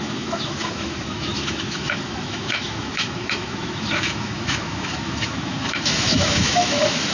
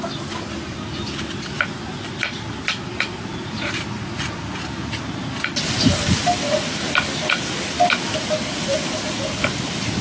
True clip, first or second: second